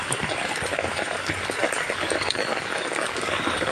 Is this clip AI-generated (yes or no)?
yes